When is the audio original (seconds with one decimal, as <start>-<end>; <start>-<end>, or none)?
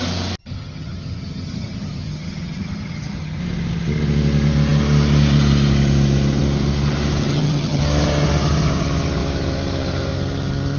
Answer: 0.0-0.4; 3.4-7.2; 7.8-10.8